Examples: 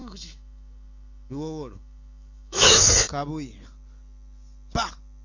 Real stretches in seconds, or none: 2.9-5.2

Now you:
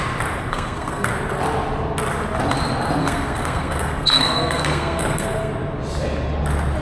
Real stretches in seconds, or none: 0.0-0.5; 1.1-3.0; 5.5-6.8

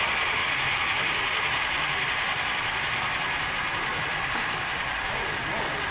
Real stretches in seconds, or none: 0.0-5.9

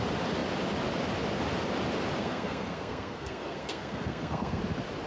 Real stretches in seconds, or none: 0.0-2.2; 4.6-5.1

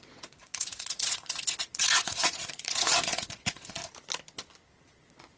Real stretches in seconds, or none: 3.8-4.8

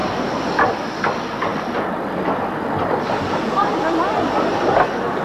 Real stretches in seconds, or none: none